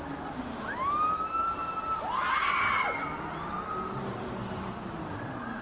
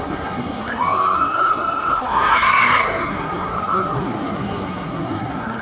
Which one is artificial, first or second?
second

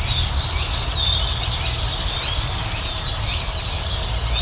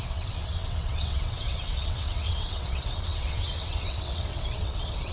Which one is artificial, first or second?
second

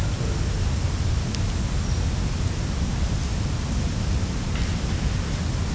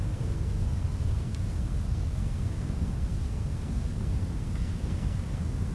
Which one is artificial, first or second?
second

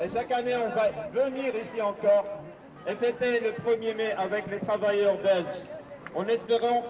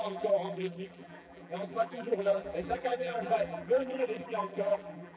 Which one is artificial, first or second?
second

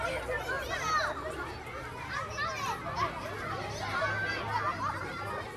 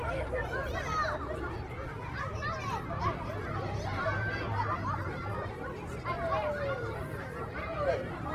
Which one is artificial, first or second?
second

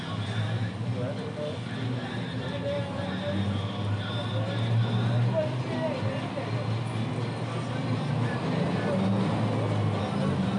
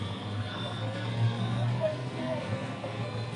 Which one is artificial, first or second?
second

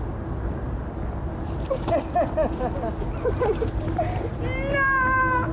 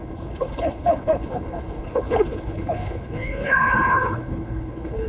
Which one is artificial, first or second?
second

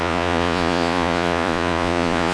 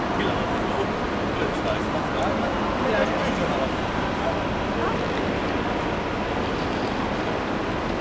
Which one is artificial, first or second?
first